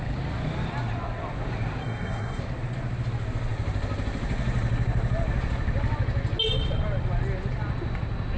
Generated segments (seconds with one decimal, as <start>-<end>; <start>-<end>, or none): 1.8-2.4